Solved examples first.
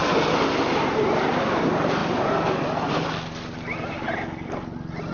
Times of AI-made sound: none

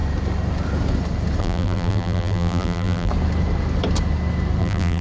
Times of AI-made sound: 1.4-3.1 (vocoder, BigVGAN v2); 4.6-5.0

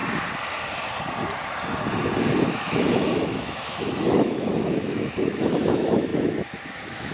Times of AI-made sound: 2.5-7.1 (autoencoder, DAC-VAE)

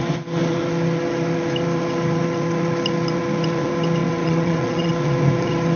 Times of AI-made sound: 4.0-4.9 (vocoder, WaveNeXt)

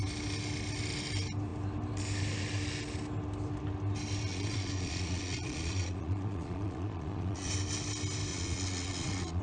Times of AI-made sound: 4.3-7.5 (vocoder, Vocos); 8.3-9.4

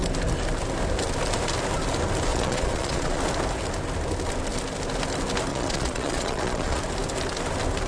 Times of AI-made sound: 2.3-3.2 (vocoder, Vocos); 5.5-6.8